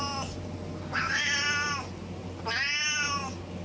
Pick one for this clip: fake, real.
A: real